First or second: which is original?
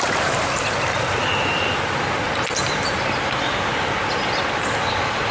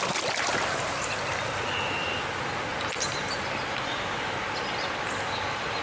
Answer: second